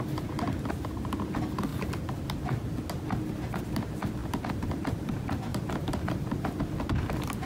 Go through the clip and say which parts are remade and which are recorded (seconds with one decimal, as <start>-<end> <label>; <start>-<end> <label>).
0.0-5.5 recorded; 5.5-6.6 remade; 6.6-7.5 recorded